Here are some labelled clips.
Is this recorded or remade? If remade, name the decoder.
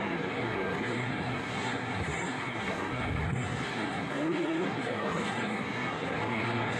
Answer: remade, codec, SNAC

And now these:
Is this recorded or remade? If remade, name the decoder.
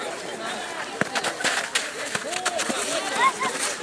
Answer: recorded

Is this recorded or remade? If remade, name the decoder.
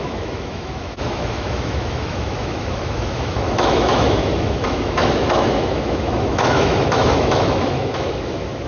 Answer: remade, autoencoder, DAC-VAE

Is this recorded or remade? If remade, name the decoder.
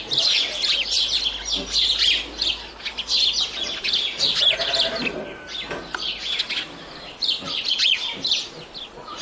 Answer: recorded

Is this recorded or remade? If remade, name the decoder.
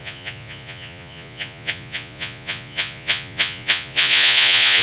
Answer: remade, vocoder, Vocos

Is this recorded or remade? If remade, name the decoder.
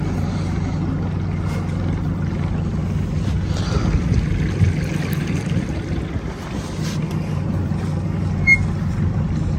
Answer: recorded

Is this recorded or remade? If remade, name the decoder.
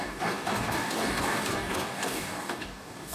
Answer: remade, codec, DAC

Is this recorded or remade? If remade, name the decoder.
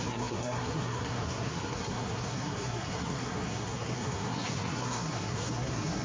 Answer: remade, codec, SNAC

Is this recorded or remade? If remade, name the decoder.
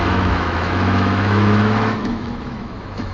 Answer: remade, autoencoder, DAC-VAE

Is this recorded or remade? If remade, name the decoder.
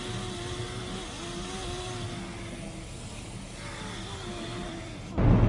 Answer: recorded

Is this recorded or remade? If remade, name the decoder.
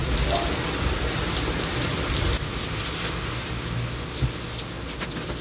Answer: recorded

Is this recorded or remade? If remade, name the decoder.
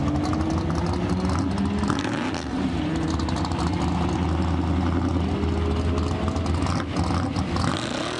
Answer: recorded